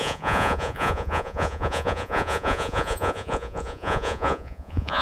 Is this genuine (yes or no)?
no